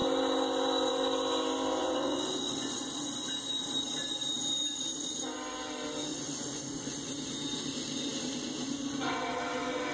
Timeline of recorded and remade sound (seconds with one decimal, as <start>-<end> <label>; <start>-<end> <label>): 0.0-1.8 recorded; 1.8-2.9 remade; 2.9-6.1 recorded; 6.1-7.1 remade; 7.1-9.9 recorded

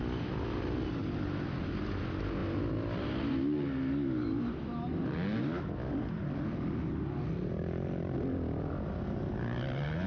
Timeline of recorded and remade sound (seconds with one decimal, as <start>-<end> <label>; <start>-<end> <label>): 0.0-10.1 recorded

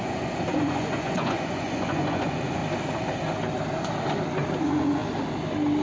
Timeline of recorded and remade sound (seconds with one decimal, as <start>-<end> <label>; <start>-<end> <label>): 0.0-2.6 remade; 2.6-4.6 recorded; 4.6-5.0 remade; 5.0-5.8 recorded